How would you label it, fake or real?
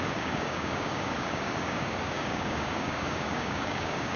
fake